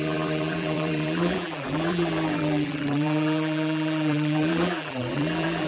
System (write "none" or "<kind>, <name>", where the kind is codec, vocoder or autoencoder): vocoder, BigVGAN v2